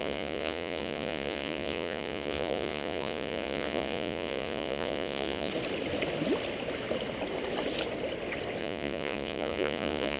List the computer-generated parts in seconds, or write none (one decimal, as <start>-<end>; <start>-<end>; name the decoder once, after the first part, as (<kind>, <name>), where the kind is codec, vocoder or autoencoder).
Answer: 0.0-5.5 (vocoder, Vocos); 8.6-10.2